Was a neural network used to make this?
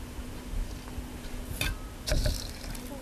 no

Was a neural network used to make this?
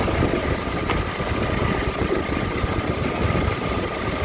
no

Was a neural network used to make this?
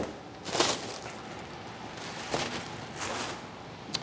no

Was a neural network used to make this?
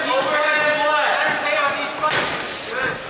no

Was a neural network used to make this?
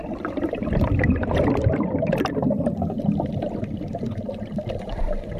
yes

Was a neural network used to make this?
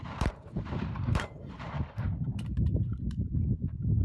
yes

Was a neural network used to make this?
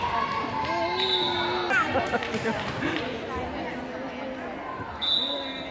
no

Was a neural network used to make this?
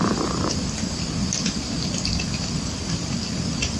yes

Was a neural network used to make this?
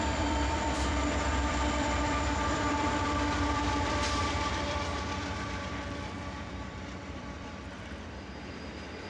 yes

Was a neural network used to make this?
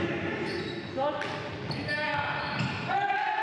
no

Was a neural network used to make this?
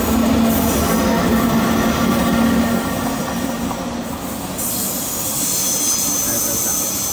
no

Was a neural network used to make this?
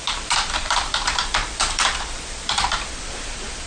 yes